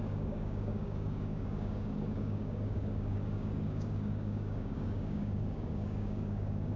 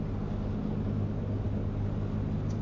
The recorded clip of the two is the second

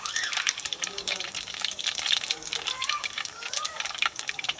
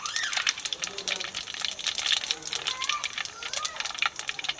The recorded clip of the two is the second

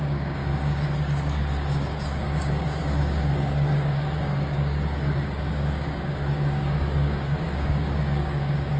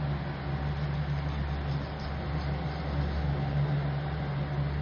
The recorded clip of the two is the second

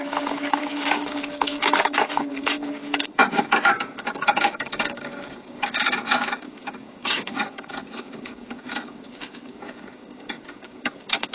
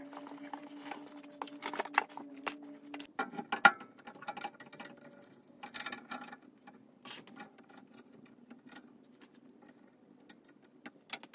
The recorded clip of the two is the second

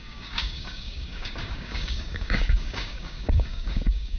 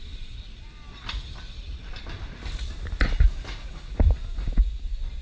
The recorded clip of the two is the second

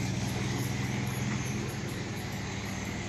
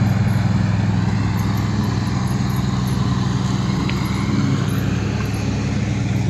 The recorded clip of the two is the second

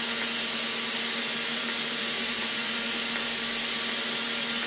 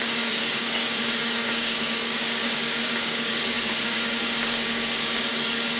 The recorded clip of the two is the first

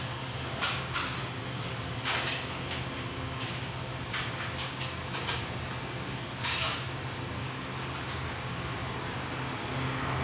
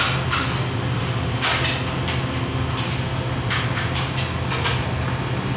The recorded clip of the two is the second